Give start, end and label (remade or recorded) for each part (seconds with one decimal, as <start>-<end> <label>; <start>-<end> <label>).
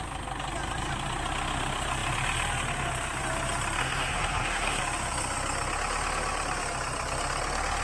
0.0-3.8 recorded; 3.8-4.8 remade; 4.8-7.8 recorded